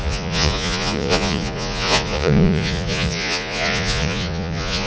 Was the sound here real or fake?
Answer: fake